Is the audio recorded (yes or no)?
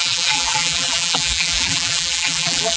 no